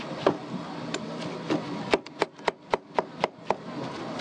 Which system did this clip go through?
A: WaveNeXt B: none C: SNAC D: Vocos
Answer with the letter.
B